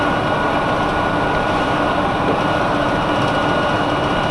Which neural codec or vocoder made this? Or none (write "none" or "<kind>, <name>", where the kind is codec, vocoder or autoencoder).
none